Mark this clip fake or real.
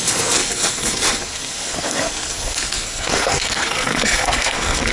fake